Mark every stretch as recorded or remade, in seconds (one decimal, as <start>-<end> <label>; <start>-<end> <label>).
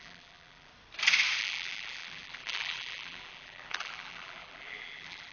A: 0.0-0.7 remade; 0.7-1.4 recorded; 1.4-5.3 remade